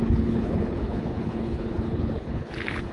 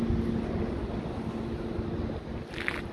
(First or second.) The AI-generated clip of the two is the first